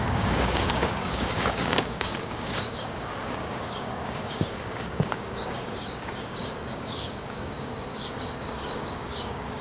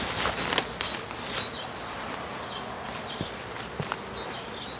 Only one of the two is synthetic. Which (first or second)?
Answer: first